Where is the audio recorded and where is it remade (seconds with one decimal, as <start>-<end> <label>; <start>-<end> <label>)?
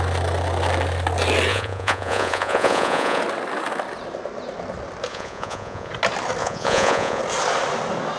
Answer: 0.0-1.5 recorded; 1.5-3.2 remade; 3.2-5.1 recorded; 5.1-5.9 remade; 5.9-6.4 recorded; 6.4-7.2 remade; 7.2-8.2 recorded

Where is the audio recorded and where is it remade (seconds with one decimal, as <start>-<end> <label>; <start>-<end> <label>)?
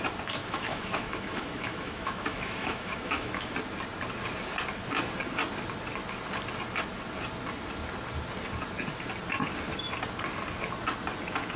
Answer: 0.0-0.4 recorded; 0.4-3.5 remade; 3.5-11.6 recorded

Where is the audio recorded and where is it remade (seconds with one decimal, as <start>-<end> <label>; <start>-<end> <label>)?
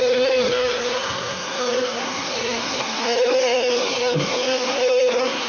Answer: 0.0-5.5 remade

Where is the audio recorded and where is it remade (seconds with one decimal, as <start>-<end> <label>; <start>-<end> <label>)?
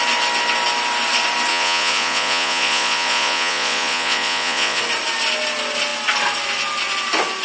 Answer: 0.0-1.5 recorded; 1.5-4.8 remade; 4.8-7.4 recorded